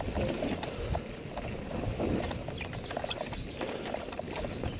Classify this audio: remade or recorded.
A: recorded